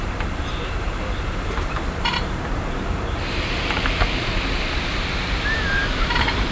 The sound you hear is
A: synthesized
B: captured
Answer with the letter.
A